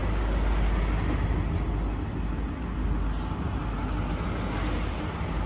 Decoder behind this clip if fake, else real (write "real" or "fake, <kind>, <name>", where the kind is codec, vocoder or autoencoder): real